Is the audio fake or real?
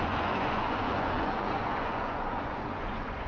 fake